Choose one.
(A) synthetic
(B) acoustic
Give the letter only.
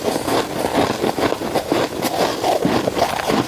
B